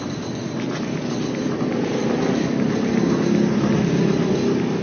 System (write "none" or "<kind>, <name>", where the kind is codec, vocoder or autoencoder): none